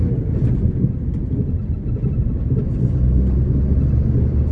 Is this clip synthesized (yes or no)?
no